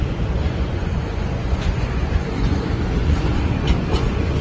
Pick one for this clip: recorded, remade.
remade